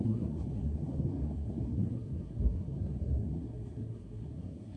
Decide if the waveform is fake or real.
fake